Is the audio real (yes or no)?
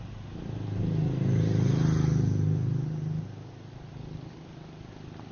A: yes